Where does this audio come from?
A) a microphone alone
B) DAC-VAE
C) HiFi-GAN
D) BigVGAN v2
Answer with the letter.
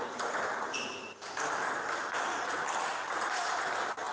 A